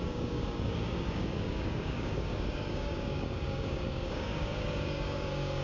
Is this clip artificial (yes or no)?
yes